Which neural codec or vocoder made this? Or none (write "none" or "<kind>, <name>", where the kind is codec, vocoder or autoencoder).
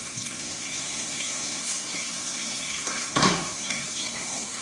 codec, SNAC